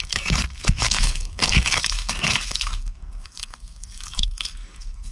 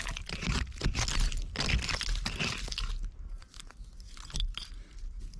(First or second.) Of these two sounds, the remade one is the first